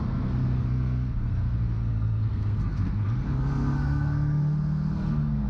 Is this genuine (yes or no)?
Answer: no